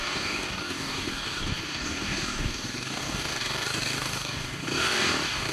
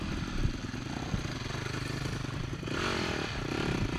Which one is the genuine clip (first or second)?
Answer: second